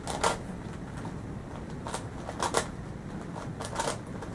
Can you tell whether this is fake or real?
real